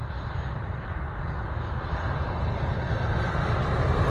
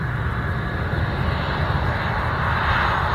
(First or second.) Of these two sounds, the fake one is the first